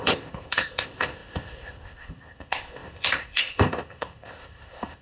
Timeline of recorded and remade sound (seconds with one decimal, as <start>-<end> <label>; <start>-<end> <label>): 0.0-5.0 remade